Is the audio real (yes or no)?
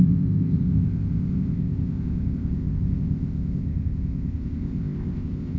no